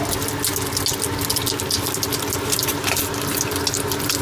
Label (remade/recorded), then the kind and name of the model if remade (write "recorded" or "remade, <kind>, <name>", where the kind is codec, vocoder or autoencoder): recorded